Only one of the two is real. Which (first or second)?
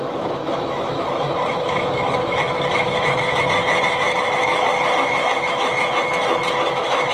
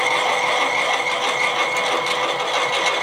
second